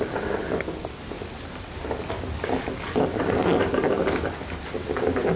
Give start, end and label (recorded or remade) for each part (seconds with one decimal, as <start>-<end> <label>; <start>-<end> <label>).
0.0-5.4 recorded